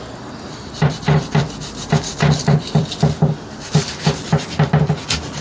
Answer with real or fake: real